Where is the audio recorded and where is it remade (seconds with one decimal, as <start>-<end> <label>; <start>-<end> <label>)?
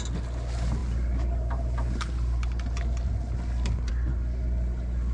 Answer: 0.0-5.1 recorded